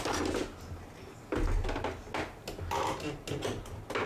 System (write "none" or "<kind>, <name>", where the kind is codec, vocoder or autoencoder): none